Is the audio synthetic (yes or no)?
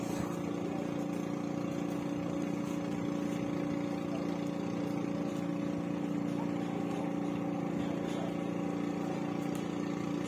no